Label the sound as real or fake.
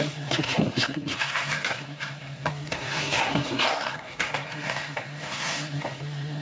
fake